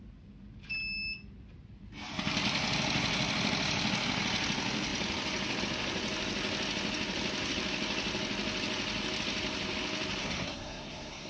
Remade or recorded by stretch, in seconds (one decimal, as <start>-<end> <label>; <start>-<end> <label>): 0.0-10.2 recorded; 10.2-11.3 remade